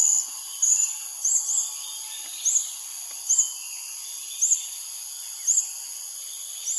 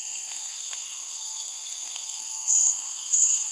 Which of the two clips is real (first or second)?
first